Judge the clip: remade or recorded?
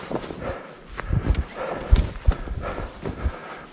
recorded